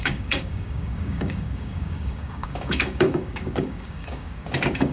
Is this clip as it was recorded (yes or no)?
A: no